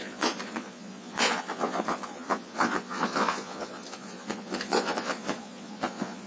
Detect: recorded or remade remade